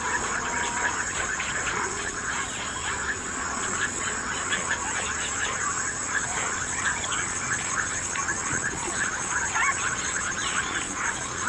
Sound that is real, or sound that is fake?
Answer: fake